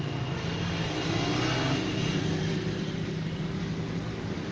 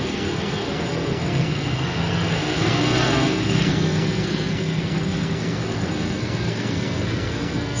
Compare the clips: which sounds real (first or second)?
first